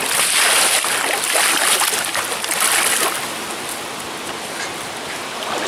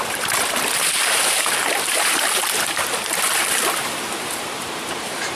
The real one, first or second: first